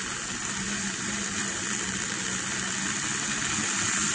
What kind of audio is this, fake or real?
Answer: real